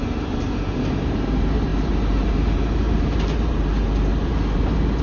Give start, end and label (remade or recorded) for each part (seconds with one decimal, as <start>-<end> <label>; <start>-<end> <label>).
0.0-5.0 remade

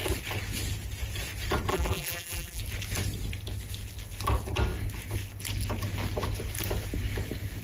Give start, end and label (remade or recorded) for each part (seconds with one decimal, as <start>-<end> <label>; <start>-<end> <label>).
0.0-1.7 recorded; 1.7-2.6 remade; 2.6-7.6 recorded

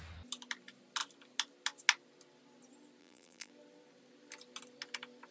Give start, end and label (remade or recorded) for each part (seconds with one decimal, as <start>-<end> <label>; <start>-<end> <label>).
0.0-3.0 recorded; 3.0-3.5 remade; 3.5-5.3 recorded

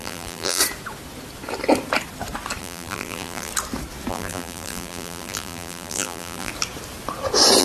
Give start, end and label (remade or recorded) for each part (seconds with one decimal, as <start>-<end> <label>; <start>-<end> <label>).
0.0-0.6 remade; 0.6-2.6 recorded; 2.6-3.5 remade; 3.5-4.1 recorded; 4.1-6.5 remade; 6.5-7.6 recorded

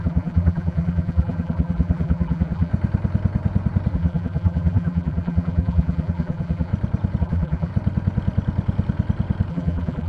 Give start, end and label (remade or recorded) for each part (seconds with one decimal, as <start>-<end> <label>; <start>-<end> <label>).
0.0-2.7 remade; 2.7-3.9 recorded; 3.9-6.7 remade; 6.7-7.2 recorded; 7.2-7.7 remade; 7.7-9.5 recorded; 9.5-10.1 remade